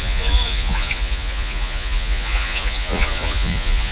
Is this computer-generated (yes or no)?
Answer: yes